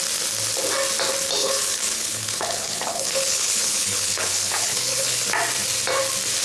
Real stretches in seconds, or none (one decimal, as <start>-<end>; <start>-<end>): 0.0-1.4; 5.2-6.4